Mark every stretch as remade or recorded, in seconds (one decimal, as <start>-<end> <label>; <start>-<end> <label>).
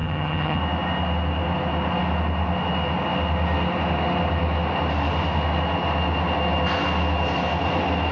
0.0-0.6 remade; 0.6-8.1 recorded